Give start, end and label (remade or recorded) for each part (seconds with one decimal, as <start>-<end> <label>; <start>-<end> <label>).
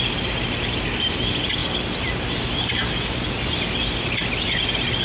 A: 0.0-5.0 recorded